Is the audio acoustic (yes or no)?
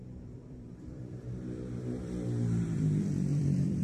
no